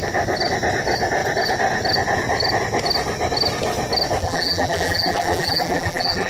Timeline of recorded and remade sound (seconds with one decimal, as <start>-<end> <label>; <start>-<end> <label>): 0.0-4.2 recorded; 4.2-6.3 remade